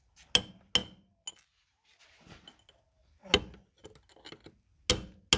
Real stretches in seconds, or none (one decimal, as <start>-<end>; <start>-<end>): 0.0-5.4